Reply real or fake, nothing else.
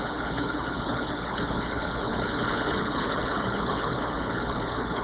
fake